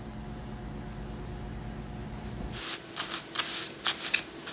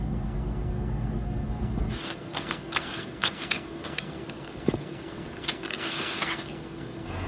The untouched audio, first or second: first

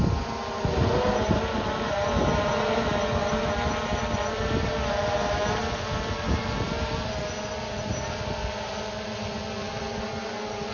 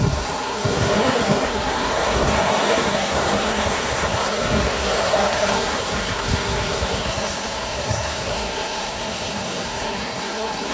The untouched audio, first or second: first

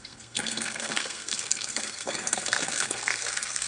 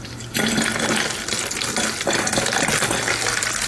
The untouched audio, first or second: second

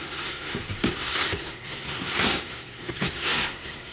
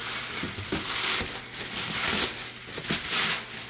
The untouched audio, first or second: second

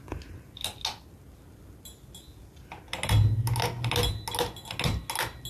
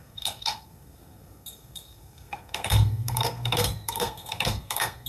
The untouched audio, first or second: first